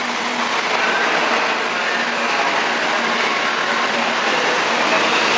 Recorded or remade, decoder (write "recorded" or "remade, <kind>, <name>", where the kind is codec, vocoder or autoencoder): recorded